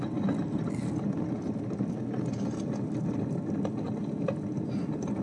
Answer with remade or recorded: recorded